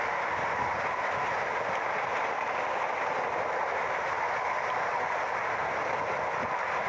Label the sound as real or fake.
real